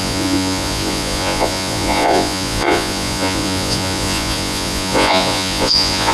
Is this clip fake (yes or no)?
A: yes